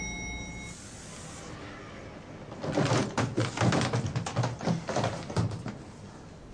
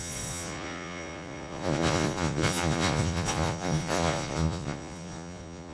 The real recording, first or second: first